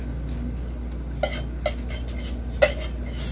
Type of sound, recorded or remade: recorded